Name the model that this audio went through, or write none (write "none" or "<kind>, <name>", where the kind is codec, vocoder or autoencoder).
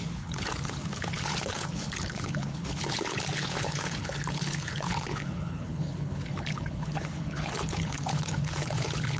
codec, HILCodec